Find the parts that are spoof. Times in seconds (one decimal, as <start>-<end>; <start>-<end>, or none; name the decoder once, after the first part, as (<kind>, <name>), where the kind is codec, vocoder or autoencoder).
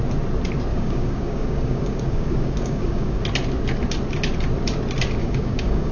0.7-3.2 (codec, DAC); 5.2-5.9